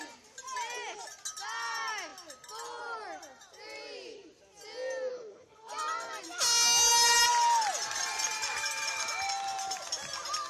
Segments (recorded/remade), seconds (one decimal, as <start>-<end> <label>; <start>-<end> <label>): 0.0-5.1 recorded; 5.1-5.7 remade; 5.7-10.5 recorded